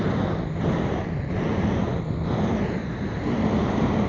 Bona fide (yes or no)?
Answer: yes